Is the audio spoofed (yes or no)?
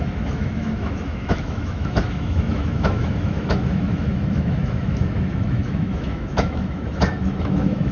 yes